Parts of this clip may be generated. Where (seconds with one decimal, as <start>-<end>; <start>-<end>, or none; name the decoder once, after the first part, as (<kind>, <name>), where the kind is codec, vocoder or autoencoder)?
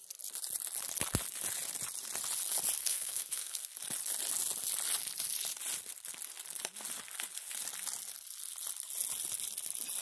2.8-3.7 (codec, SNAC)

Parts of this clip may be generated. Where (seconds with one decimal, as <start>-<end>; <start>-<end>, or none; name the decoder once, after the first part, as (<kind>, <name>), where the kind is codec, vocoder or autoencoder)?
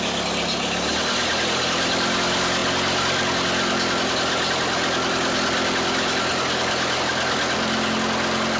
none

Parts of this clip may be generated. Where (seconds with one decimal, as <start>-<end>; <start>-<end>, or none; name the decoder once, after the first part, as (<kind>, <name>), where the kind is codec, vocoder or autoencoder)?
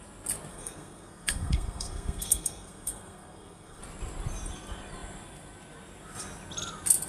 0.5-3.8 (codec, SNAC)